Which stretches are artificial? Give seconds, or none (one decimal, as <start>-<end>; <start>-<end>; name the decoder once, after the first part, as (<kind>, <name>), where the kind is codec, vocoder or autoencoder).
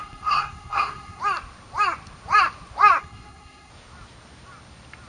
0.0-1.2 (codec, SNAC); 3.0-3.7